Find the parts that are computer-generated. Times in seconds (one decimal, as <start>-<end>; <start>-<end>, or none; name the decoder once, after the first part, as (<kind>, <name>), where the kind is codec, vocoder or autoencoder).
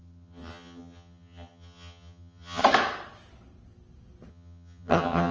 0.0-2.6 (vocoder, HiFi-GAN); 4.3-5.3